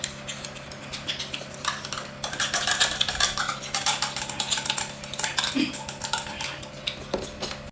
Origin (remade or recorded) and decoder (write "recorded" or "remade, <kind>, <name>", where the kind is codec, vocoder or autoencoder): recorded